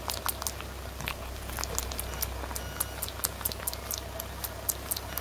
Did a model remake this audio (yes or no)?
no